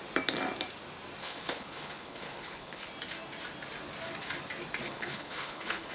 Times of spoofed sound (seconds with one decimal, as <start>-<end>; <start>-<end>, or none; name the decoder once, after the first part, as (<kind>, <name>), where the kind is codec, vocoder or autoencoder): 1.2-2.9 (codec, HILCodec); 4.8-5.9